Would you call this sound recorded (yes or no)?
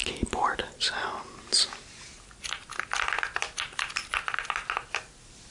yes